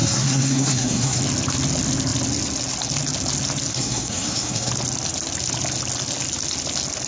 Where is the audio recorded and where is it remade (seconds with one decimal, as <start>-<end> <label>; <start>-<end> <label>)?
0.0-1.2 remade; 1.2-3.7 recorded; 3.7-4.7 remade; 4.7-7.1 recorded